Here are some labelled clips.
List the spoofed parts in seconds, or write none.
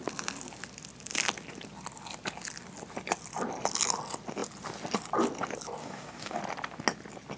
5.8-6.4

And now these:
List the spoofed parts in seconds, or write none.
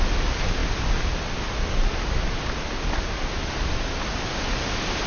none